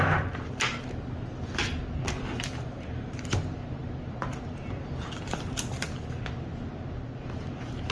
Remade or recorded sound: recorded